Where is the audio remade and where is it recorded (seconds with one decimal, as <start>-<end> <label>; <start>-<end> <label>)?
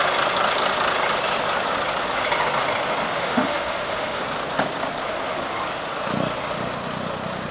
0.0-3.1 recorded; 3.1-4.2 remade; 4.2-7.5 recorded